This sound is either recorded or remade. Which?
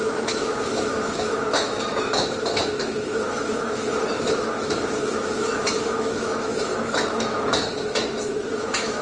remade